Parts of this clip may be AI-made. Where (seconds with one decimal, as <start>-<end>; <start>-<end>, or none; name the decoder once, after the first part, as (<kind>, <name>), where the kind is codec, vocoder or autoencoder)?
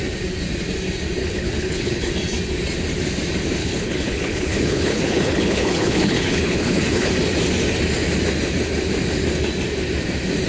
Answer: 1.2-2.1 (codec, HILCodec); 3.6-7.1